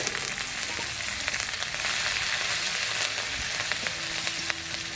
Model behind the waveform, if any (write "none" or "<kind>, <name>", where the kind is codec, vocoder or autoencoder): none